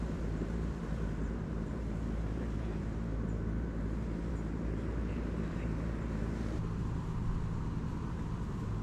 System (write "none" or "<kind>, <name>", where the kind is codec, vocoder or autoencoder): vocoder, BigVGAN v2